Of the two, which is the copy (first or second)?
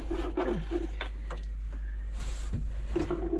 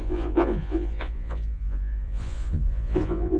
second